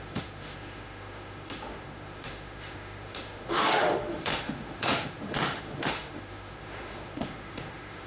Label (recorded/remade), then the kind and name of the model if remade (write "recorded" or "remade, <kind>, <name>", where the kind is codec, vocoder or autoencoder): remade, autoencoder, DAC-VAE